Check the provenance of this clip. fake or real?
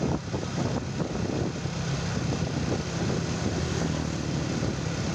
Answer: real